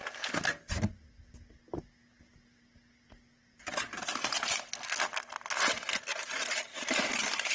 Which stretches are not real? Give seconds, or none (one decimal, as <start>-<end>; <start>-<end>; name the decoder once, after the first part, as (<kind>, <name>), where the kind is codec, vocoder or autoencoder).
none